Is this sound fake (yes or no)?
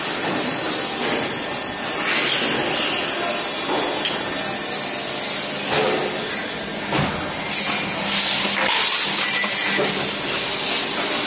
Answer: no